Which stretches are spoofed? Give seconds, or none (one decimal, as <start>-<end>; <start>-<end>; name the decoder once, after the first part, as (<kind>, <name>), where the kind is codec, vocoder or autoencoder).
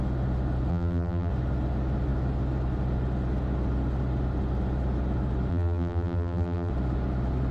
0.7-1.3 (vocoder, BigVGAN v2); 5.5-6.7